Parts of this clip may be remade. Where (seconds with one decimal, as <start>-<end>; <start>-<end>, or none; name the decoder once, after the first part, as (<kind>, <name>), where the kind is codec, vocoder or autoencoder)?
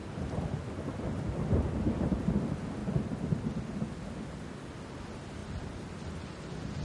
none